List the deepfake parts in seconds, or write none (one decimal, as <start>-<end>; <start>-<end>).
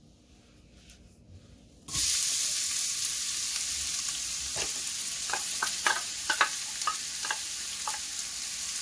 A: 5.0-6.2